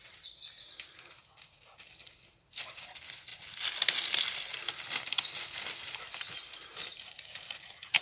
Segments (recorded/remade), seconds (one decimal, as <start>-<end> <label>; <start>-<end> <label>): 0.0-6.7 recorded; 6.7-8.0 remade